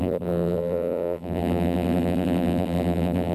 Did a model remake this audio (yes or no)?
yes